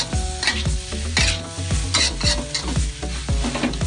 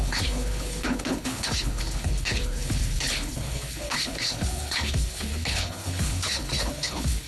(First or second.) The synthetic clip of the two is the second